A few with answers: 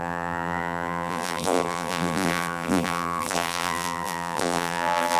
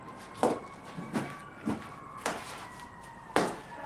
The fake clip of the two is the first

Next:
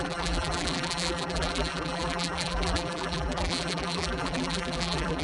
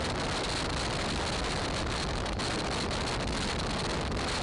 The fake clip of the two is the first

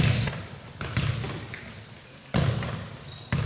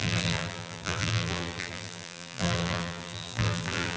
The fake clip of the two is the second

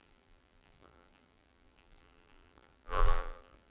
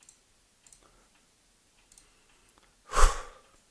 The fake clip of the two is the first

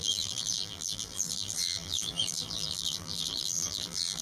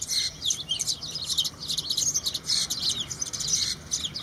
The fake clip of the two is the first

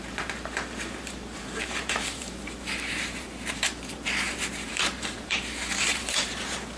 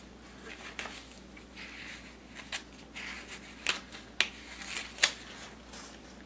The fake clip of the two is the first